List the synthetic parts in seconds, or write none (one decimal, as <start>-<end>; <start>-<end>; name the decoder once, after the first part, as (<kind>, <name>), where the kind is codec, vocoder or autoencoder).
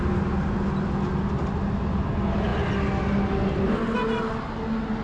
none